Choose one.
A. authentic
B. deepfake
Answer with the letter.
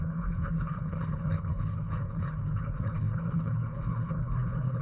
B